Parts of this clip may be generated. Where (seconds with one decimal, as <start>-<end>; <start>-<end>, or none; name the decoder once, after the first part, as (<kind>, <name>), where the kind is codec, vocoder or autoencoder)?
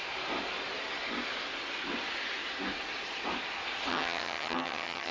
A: 3.9-5.1 (vocoder, HiFi-GAN)